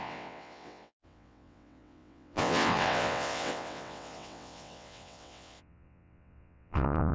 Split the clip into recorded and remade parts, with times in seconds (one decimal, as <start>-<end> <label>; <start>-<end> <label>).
0.0-7.1 remade